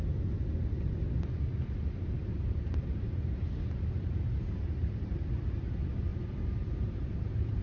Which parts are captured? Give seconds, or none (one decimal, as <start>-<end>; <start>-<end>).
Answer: 0.0-2.2; 5.3-6.1